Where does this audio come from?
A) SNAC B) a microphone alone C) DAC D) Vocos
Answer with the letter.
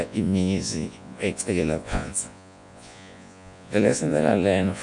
D